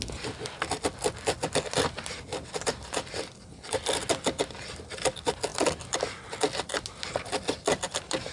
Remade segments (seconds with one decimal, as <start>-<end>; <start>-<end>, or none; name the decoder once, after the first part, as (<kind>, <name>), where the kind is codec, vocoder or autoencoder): none